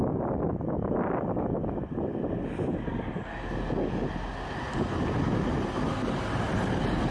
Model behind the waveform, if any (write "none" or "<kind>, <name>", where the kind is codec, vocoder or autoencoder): none